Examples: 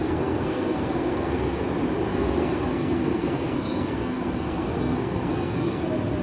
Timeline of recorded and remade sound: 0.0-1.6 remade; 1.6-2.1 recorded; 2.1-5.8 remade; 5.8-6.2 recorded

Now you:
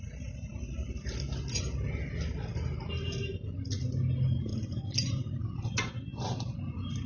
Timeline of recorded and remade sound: 0.0-7.1 recorded

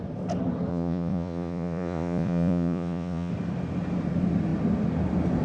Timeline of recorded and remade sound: 0.0-0.7 recorded; 0.7-3.3 remade; 3.3-5.4 recorded

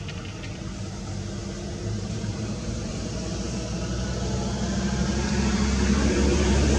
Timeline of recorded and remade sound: 0.0-1.4 recorded; 1.4-2.9 remade; 2.9-5.0 recorded; 5.0-6.8 remade

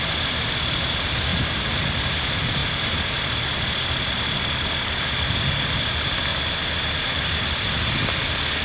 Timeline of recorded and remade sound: 0.0-8.6 recorded

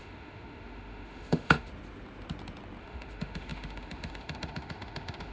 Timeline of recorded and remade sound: 0.0-1.7 remade; 1.7-2.8 recorded; 2.8-5.3 remade

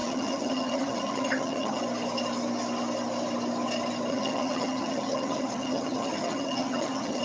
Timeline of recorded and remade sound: 0.0-1.8 remade; 1.8-4.1 recorded; 4.1-7.2 remade

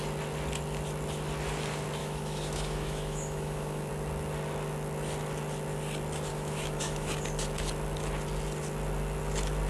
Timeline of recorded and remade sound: 0.0-2.0 recorded; 2.0-3.9 remade; 3.9-6.3 recorded; 6.3-7.1 remade; 7.1-9.7 recorded